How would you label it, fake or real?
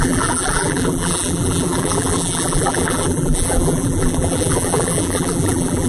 fake